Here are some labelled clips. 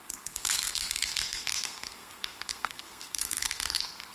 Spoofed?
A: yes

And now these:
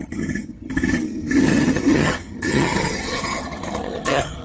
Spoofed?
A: yes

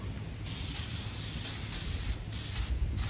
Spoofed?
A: no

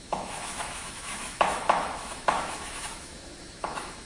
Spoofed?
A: yes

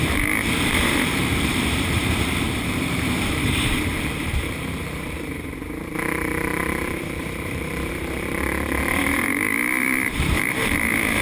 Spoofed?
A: yes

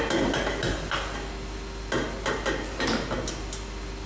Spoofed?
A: no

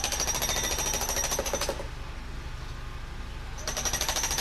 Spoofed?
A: no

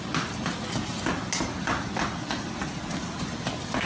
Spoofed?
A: no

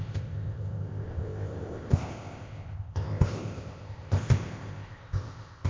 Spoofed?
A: yes